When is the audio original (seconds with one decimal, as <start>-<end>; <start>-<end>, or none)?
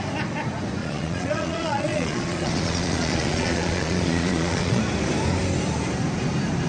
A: 0.0-0.8; 4.8-6.7